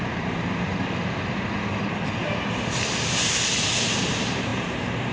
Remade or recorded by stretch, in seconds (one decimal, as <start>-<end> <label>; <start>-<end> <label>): 0.0-1.0 remade; 1.0-4.1 recorded; 4.1-5.1 remade